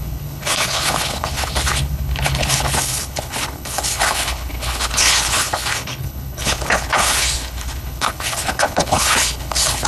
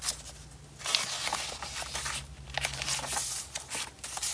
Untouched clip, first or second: second